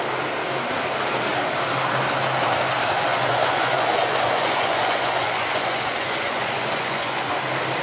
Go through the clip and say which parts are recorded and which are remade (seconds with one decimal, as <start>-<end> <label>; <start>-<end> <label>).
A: 0.0-3.1 recorded; 3.1-7.3 remade; 7.3-7.8 recorded